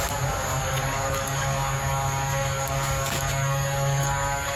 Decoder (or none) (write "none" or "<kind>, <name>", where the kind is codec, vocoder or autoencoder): codec, DAC